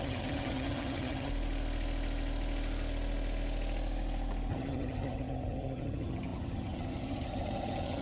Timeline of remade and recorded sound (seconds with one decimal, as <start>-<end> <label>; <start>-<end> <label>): 0.0-1.3 remade; 1.3-4.5 recorded; 4.5-8.0 remade